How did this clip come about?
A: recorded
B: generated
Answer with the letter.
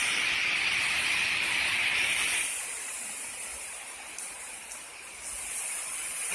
A